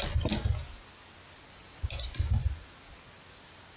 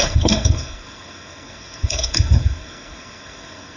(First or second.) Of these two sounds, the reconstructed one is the second